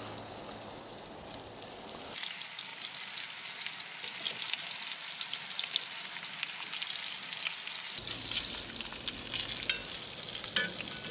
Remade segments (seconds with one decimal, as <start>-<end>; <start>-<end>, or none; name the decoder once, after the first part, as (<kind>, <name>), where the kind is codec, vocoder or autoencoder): none